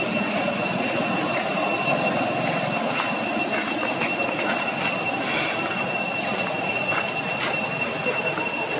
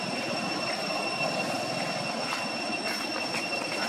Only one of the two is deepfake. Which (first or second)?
second